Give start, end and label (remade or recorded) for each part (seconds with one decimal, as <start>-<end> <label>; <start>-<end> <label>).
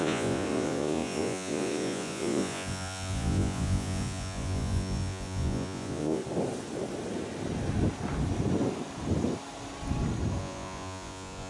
0.0-6.2 remade; 6.2-10.4 recorded; 10.4-11.5 remade